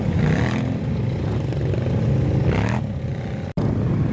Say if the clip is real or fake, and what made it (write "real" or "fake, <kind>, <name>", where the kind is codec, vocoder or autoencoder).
real